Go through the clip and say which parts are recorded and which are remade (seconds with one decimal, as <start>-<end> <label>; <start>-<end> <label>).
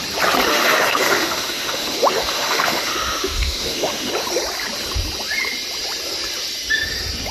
0.0-0.5 recorded; 0.5-4.1 remade; 4.1-7.3 recorded